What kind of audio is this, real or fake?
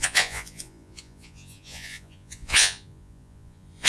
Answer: fake